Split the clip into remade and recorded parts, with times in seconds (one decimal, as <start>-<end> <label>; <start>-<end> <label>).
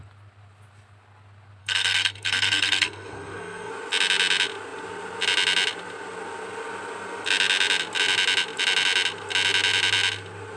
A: 0.0-1.6 recorded; 1.6-3.7 remade; 3.7-10.6 recorded